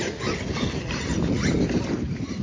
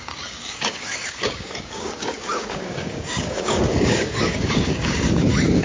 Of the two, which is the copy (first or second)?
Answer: second